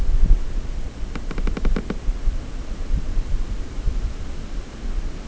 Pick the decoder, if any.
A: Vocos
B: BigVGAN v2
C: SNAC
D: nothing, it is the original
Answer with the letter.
D